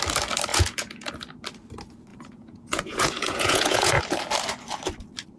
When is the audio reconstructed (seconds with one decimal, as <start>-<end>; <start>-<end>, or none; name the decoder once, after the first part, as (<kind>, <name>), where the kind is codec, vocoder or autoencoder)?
0.5-1.1 (vocoder, Vocos); 2.1-4.0